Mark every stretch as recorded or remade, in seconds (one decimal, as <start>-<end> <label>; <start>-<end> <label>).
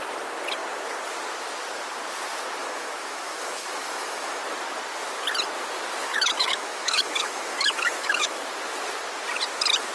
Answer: 0.0-2.6 recorded; 2.6-4.4 remade; 4.4-6.0 recorded; 6.0-8.4 remade; 8.4-9.9 recorded